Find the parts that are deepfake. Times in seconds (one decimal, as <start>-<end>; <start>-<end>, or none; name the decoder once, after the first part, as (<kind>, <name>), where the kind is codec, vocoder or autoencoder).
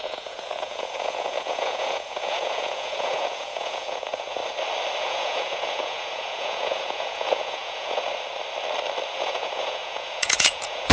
0.0-4.4 (vocoder, Vocos); 5.0-8.1; 9.1-10.9